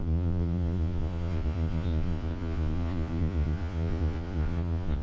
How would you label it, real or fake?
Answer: fake